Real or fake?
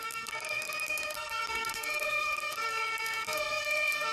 fake